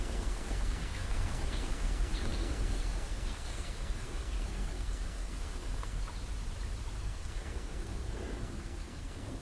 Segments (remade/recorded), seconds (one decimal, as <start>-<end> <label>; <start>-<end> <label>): 0.0-6.0 remade; 6.0-7.0 recorded; 7.0-9.4 remade